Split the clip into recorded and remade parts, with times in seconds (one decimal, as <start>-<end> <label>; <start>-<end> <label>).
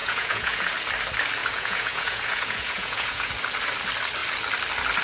0.0-0.7 remade; 0.7-1.4 recorded; 1.4-3.3 remade; 3.3-5.0 recorded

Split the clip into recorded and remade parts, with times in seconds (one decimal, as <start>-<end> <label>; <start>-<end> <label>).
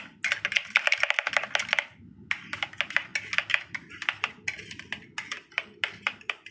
0.0-6.5 recorded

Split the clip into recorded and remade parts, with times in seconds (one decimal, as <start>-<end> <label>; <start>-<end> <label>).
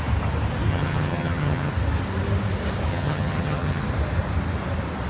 0.0-0.7 recorded; 0.7-1.7 remade; 1.7-2.9 recorded; 2.9-3.8 remade; 3.8-5.1 recorded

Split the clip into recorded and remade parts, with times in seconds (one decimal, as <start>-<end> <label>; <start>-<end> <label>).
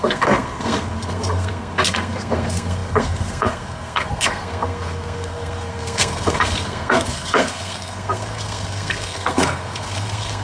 0.0-10.4 remade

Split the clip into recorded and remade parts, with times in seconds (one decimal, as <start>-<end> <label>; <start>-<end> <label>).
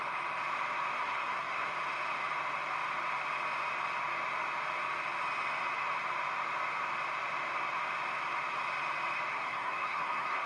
0.0-1.0 recorded; 1.0-1.7 remade; 1.7-9.3 recorded; 9.3-10.5 remade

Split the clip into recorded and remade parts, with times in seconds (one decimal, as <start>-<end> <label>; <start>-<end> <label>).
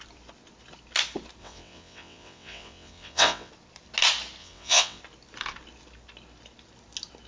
0.0-1.4 recorded; 1.4-3.5 remade; 3.5-4.4 recorded; 4.4-5.0 remade; 5.0-7.3 recorded